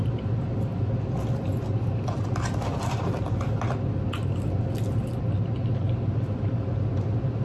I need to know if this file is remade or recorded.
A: recorded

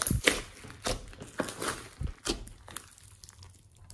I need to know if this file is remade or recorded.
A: recorded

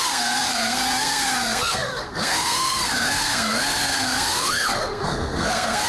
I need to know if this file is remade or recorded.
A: remade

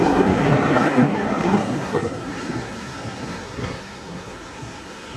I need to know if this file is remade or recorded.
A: remade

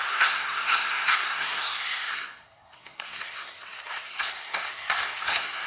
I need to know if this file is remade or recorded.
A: remade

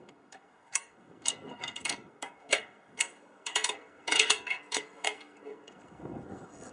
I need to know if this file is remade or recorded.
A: remade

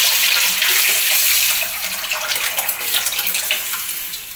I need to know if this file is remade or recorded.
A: recorded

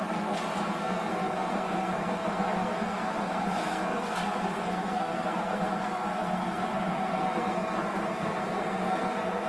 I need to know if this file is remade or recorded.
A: remade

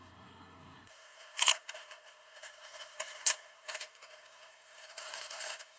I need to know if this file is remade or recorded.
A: remade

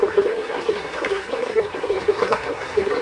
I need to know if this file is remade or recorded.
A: remade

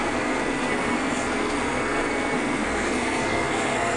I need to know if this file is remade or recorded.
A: remade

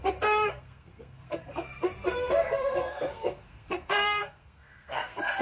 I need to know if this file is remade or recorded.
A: remade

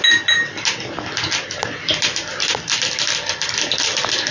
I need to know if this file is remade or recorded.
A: recorded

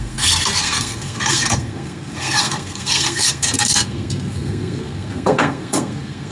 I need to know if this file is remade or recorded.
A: remade